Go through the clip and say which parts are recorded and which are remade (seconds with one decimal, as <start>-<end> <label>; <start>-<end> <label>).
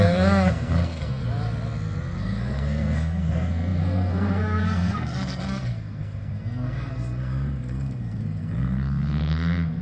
0.0-1.2 remade; 1.2-2.2 recorded; 2.2-9.8 remade